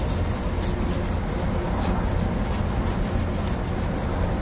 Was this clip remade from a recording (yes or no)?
no